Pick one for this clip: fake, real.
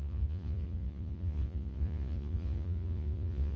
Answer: fake